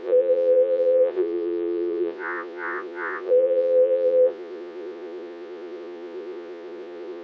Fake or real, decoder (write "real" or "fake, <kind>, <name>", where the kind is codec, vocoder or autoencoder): fake, vocoder, Vocos